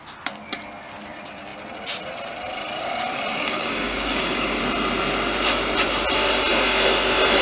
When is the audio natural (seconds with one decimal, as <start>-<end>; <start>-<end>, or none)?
0.0-3.3; 4.6-7.4